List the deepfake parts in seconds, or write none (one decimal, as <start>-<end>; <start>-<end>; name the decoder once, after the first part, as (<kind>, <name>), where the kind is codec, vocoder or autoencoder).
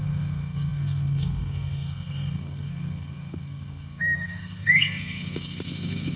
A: 0.0-6.2 (codec, SNAC)